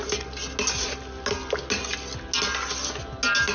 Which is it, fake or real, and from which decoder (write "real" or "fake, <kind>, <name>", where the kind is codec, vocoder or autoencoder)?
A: real